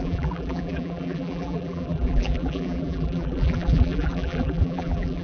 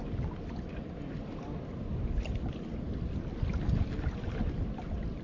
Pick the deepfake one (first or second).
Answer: first